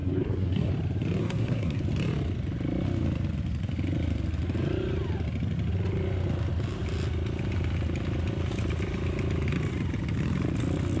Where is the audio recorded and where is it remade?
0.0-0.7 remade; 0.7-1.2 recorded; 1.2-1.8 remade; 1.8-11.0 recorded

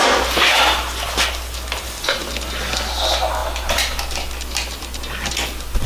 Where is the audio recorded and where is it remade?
0.0-5.9 recorded

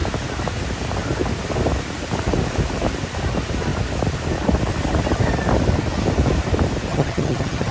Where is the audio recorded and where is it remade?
0.0-6.9 recorded; 6.9-7.7 remade